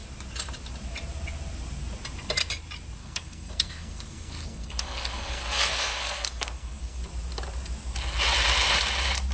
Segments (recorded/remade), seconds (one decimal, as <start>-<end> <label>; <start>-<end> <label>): 0.0-3.0 recorded; 3.0-7.0 remade; 7.0-9.3 recorded